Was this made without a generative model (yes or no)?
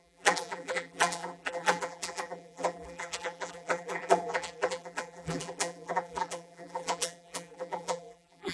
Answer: no